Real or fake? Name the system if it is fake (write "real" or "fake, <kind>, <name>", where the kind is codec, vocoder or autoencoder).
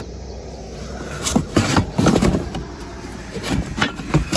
fake, vocoder, BigVGAN v2